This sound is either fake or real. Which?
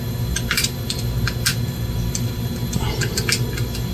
real